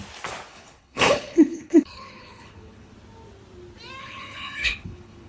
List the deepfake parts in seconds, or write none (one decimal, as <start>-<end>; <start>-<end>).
0.5-2.9; 4.0-5.3